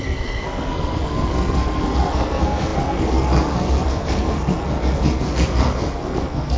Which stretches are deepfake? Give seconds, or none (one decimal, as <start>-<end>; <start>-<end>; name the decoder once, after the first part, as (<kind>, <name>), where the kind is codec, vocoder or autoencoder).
0.0-6.6 (codec, SNAC)